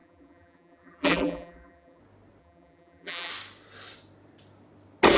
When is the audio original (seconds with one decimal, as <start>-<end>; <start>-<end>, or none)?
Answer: 2.0-2.4; 3.3-5.2